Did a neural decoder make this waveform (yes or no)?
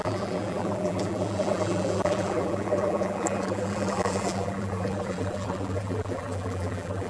yes